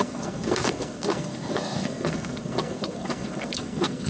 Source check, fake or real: fake